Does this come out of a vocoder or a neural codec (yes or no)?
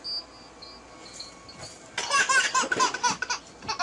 no